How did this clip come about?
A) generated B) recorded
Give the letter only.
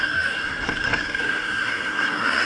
A